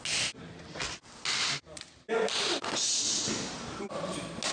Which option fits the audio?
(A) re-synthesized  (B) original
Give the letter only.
B